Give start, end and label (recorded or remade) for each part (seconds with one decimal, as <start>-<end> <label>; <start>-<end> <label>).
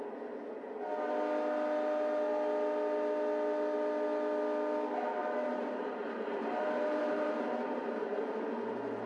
0.0-5.2 recorded; 5.2-8.5 remade; 8.5-9.1 recorded